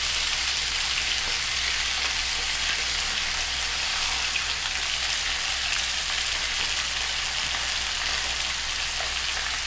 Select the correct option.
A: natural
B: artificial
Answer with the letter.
A